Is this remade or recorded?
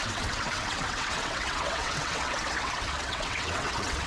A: remade